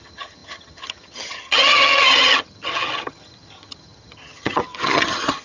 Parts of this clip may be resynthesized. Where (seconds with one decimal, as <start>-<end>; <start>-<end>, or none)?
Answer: 0.0-5.4